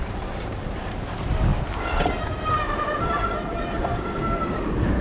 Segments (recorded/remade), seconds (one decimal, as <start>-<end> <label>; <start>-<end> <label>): 0.0-1.5 remade; 1.5-4.5 recorded; 4.5-5.0 remade